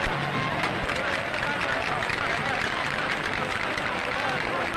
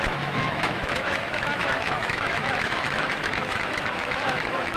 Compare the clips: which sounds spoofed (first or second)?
second